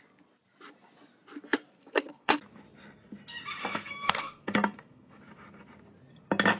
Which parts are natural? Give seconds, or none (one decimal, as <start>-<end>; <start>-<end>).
0.0-1.6; 2.4-3.7; 5.2-6.6